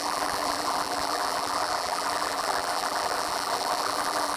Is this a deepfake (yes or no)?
yes